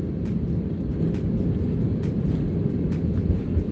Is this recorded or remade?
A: recorded